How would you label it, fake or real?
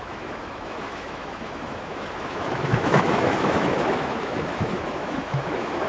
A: fake